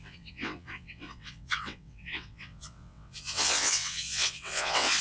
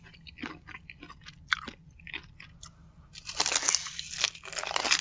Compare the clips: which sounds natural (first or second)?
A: second